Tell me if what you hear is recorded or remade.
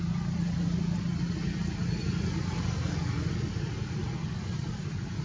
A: recorded